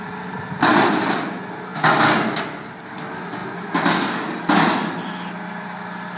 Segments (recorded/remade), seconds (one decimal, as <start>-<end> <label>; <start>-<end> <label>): 0.0-6.2 recorded